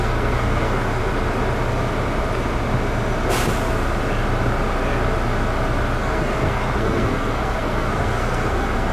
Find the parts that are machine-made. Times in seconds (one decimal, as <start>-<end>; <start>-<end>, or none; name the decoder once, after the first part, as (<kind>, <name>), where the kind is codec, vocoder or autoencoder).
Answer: 0.0-1.0 (codec, SNAC); 6.0-8.9